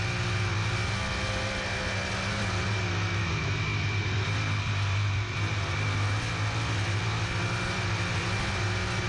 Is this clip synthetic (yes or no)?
no